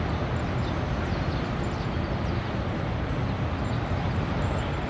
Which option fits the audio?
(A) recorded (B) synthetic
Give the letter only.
A